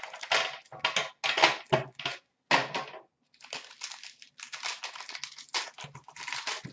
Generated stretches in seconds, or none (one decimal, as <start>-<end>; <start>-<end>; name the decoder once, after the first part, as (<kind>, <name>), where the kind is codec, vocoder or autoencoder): none